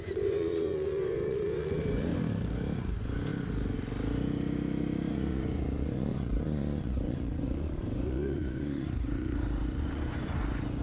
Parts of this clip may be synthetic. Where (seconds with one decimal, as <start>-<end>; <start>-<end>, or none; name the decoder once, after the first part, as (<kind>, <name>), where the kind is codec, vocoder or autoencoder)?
0.0-2.1 (vocoder, Vocos); 2.8-3.3; 5.1-10.8

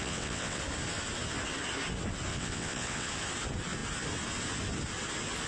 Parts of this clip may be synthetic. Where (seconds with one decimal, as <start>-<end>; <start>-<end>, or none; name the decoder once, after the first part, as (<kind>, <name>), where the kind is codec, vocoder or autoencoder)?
0.0-0.6 (vocoder, WaveNeXt); 2.3-3.1

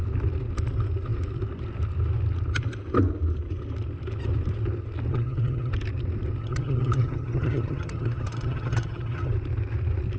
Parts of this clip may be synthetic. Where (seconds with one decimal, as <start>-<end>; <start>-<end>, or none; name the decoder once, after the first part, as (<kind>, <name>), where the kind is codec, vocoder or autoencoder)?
5.1-5.7 (vocoder, HiFi-GAN); 6.4-9.3

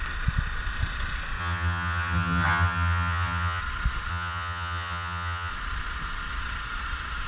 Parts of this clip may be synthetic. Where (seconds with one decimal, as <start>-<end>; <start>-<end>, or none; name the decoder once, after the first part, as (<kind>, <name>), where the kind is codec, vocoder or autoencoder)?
1.4-3.6 (vocoder, HiFi-GAN); 4.1-5.5